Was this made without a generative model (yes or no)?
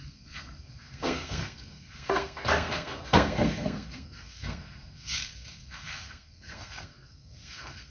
no